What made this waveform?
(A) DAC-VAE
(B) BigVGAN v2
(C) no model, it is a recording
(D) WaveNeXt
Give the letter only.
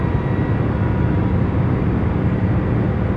C